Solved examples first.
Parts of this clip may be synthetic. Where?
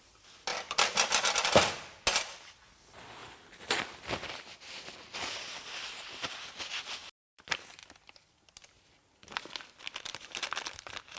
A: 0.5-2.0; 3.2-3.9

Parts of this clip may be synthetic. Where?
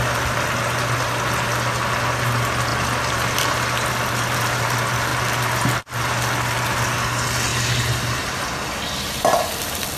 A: none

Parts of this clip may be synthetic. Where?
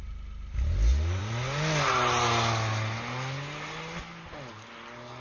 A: none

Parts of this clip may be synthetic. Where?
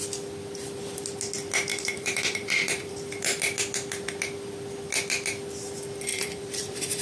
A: 1.7-2.9; 6.1-7.0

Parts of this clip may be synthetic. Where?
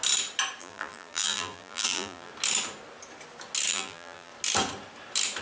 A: 0.6-2.3; 3.7-4.3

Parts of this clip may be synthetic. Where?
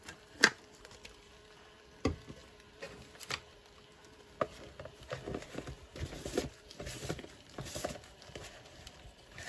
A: 0.0-2.4; 6.5-9.5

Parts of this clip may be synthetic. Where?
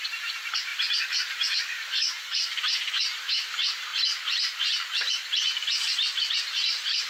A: 0.0-3.9; 6.3-7.1